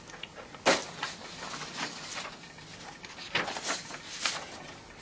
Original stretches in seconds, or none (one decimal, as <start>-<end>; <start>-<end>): 0.0-5.0